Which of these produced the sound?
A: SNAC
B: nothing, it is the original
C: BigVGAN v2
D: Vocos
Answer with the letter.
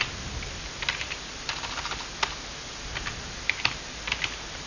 B